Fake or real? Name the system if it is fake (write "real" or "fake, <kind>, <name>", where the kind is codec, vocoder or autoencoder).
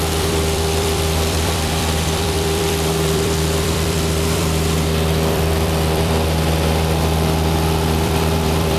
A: fake, vocoder, BigVGAN v2